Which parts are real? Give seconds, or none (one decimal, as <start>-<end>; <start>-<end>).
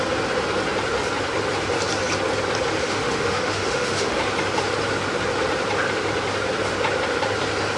0.0-2.8; 4.2-7.8